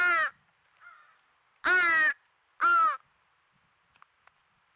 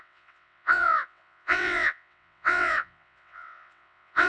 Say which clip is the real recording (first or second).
first